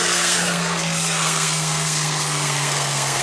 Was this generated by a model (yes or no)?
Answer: yes